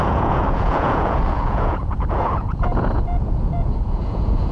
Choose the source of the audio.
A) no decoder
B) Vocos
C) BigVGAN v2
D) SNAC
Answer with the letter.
B